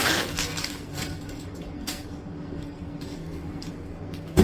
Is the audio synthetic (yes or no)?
yes